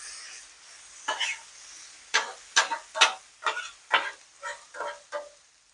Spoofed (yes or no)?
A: no